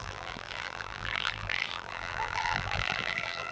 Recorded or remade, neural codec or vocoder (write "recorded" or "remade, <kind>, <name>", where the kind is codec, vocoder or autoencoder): remade, vocoder, BigVGAN v2